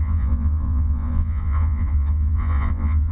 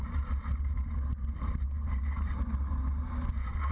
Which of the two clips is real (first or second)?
second